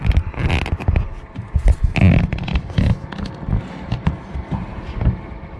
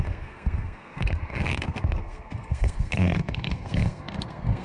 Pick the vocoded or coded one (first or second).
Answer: second